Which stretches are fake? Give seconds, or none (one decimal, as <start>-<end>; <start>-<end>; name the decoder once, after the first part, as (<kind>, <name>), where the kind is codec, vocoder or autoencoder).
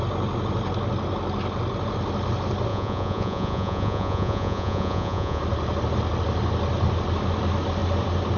2.7-5.4 (vocoder, Vocos)